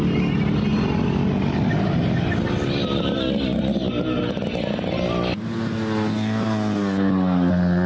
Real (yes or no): yes